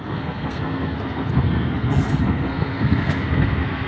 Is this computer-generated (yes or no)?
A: yes